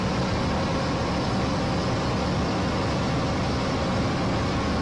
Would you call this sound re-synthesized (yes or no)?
no